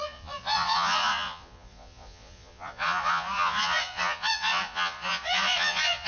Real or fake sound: fake